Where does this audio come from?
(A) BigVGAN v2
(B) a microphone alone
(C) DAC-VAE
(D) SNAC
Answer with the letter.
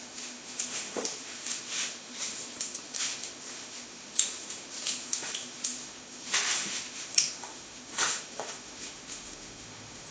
C